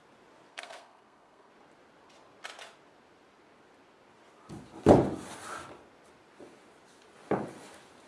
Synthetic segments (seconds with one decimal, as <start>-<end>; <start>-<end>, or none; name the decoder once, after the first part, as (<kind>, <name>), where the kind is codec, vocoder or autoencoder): 0.5-1.5 (codec, SNAC)

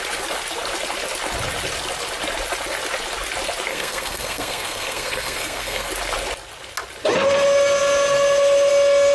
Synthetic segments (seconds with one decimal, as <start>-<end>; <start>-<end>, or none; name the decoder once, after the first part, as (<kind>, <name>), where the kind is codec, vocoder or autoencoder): 3.7-5.9 (codec, SNAC)

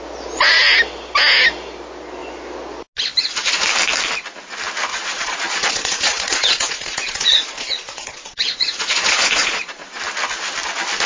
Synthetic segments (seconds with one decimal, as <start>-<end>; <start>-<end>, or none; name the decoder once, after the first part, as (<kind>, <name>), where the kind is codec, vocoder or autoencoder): 4.9-10.0 (vocoder, Vocos)

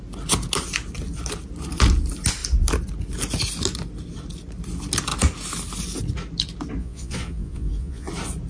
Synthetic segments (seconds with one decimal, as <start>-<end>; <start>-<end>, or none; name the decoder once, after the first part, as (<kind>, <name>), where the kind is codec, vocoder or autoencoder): 6.8-8.1 (vocoder, Vocos)

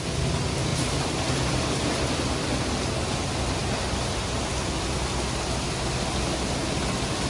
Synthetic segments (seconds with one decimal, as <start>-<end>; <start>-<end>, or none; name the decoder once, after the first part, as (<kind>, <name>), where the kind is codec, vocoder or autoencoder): 0.7-2.7 (vocoder, BigVGAN v2)

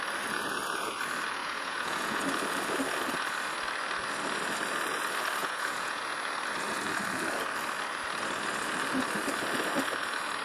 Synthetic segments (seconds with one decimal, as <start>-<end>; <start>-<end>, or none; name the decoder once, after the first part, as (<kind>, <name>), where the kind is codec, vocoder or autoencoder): 1.4-2.2 (vocoder, Vocos); 5.4-6.0

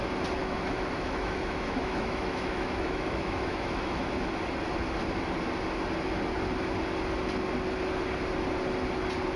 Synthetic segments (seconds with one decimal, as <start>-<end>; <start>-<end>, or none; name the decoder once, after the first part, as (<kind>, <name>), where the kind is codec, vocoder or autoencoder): 0.4-4.1 (autoencoder, DAC-VAE)